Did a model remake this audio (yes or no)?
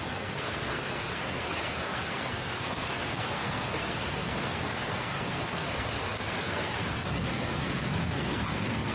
yes